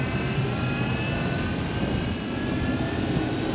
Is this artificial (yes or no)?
no